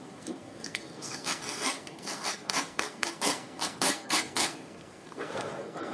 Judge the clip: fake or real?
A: fake